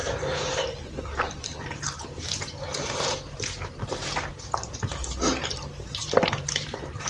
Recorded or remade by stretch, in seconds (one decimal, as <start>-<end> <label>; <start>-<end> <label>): 0.0-7.1 remade

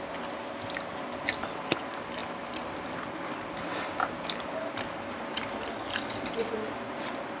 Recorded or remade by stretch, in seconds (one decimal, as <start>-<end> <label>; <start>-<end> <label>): 0.0-2.2 recorded; 2.2-5.2 remade; 5.2-7.4 recorded

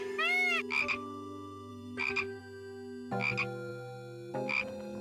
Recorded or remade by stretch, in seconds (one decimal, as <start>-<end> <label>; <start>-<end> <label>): 0.0-1.7 recorded; 1.7-2.4 remade; 2.4-5.0 recorded

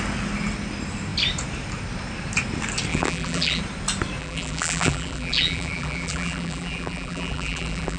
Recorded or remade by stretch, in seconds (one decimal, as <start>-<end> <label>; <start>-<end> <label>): 0.0-2.9 recorded; 2.9-3.6 remade; 3.6-4.2 recorded; 4.2-8.0 remade

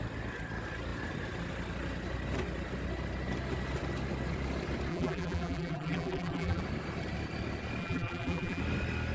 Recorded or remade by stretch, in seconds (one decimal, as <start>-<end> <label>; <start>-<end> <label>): 0.0-4.9 recorded; 4.9-6.6 remade; 6.6-7.8 recorded; 7.8-8.6 remade; 8.6-9.1 recorded

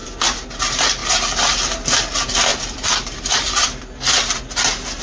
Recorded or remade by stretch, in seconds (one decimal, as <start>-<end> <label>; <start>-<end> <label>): 0.0-0.5 remade; 0.5-2.5 recorded; 2.5-4.4 remade; 4.4-5.0 recorded